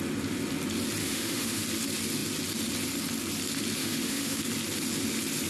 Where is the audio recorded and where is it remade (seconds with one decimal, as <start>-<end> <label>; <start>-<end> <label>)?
0.0-1.0 recorded; 1.0-1.6 remade; 1.6-3.8 recorded; 3.8-4.4 remade; 4.4-5.5 recorded